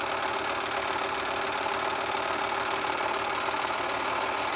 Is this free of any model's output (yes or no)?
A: yes